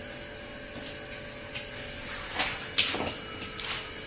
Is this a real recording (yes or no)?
yes